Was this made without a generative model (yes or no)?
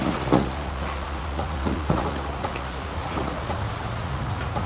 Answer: no